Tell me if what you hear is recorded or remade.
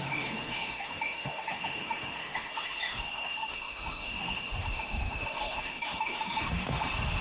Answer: remade